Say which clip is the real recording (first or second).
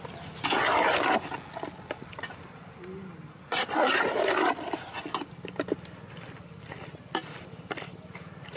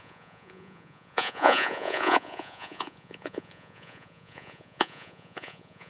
first